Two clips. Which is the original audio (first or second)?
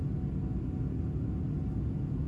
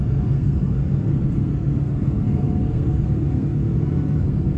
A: first